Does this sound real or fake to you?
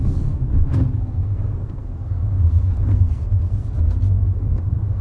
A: fake